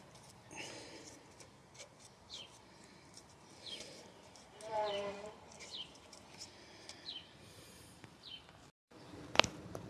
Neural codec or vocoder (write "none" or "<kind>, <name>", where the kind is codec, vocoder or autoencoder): vocoder, BigVGAN v2